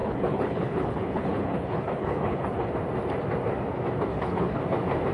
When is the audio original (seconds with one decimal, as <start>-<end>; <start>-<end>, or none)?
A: 2.7-4.1; 4.6-5.1

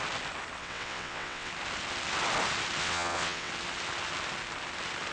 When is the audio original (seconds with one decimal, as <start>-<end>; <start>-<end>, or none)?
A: 0.0-0.6; 1.5-2.8; 3.5-5.1

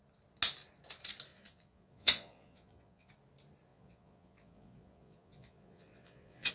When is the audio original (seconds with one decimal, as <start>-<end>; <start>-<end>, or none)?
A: 0.0-1.3; 3.1-3.7

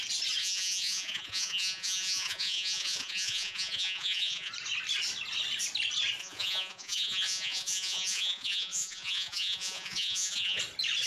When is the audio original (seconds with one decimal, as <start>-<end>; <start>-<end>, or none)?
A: 0.0-0.4; 4.5-6.2; 10.6-11.1

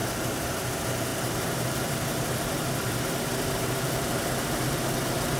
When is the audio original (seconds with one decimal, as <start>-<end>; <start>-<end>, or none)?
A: 0.0-1.1; 4.3-5.4

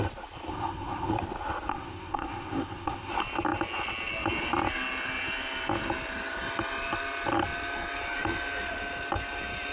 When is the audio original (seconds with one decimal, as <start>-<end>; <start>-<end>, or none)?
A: 0.0-0.5; 1.1-1.7; 3.1-9.7

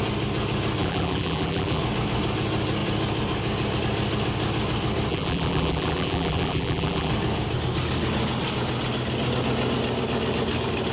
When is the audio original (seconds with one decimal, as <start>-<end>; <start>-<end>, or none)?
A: 0.0-0.8; 1.8-5.1; 7.1-10.9